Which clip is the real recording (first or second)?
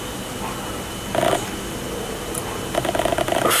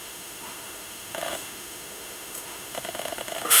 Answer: first